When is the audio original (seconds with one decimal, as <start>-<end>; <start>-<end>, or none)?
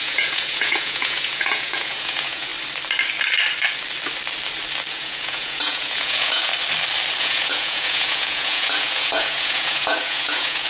2.5-4.9; 6.5-7.2